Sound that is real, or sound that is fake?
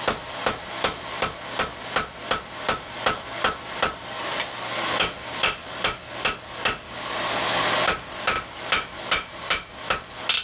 real